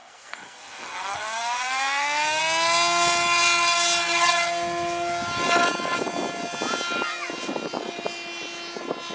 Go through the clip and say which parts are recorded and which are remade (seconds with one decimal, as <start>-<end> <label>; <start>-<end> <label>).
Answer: 0.0-2.4 remade; 2.4-9.1 recorded